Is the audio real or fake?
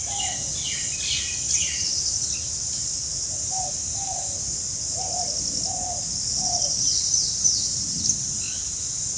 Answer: real